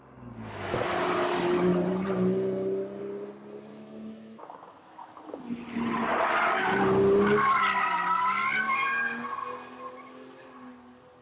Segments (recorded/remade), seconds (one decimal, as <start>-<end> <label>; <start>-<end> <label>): 0.0-3.7 recorded; 3.7-5.2 remade; 5.2-11.2 recorded